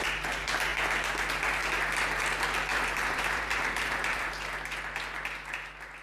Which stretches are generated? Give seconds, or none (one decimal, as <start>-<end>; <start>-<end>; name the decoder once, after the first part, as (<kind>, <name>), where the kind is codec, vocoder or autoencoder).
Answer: 2.7-4.3 (vocoder, BigVGAN v2)

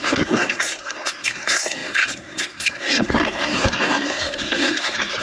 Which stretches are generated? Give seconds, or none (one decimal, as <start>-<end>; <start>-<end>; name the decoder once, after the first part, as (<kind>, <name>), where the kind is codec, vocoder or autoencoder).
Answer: 0.0-5.2 (codec, SNAC)

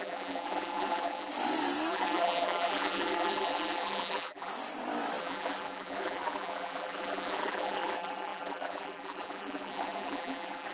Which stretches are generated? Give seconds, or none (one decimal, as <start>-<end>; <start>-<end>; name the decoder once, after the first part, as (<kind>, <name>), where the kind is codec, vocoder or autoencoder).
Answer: 0.0-1.3 (vocoder, BigVGAN v2); 1.9-4.5; 5.2-10.7

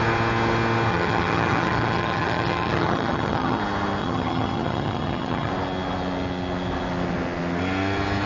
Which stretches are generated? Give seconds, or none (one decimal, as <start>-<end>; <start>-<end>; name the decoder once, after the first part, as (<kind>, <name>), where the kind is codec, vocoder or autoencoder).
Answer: 0.9-3.6 (vocoder, HiFi-GAN); 4.0-5.5

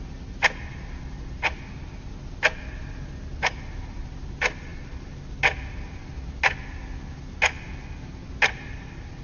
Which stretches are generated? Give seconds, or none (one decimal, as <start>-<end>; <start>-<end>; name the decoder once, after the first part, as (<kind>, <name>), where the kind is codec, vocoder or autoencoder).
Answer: none

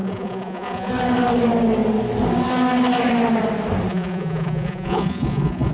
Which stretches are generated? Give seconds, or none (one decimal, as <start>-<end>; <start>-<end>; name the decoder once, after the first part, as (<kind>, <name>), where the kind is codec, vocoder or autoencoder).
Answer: 0.0-0.9 (vocoder, Vocos); 3.9-5.7